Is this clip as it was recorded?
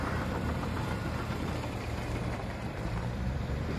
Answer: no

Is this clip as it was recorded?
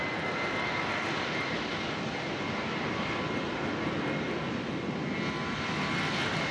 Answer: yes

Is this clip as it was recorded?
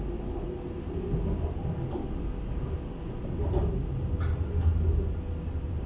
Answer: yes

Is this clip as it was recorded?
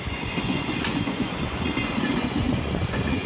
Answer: no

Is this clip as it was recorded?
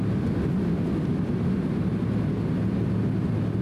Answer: yes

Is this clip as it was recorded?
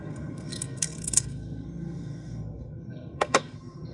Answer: no